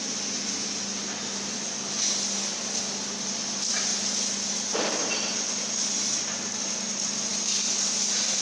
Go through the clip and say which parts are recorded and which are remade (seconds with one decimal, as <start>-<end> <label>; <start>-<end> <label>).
0.0-8.4 recorded